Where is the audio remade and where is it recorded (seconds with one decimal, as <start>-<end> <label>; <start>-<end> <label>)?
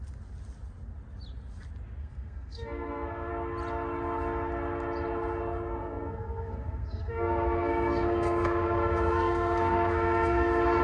0.0-2.0 recorded; 2.0-3.3 remade; 3.3-5.8 recorded; 5.8-10.8 remade